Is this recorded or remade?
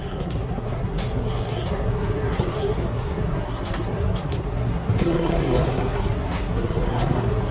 remade